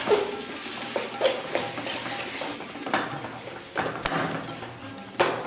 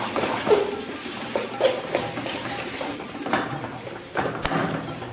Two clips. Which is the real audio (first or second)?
first